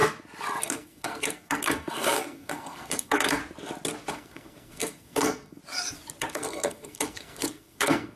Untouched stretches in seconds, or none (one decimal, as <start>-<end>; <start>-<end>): 0.0-0.6; 3.4-4.1; 5.6-6.2